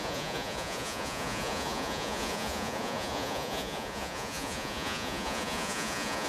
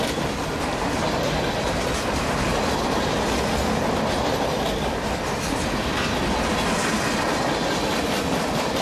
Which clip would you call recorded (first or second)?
second